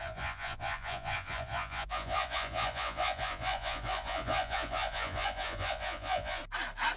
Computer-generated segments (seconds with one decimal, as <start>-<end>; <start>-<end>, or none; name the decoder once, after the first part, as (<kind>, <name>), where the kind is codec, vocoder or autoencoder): 0.0-6.4 (vocoder, Vocos)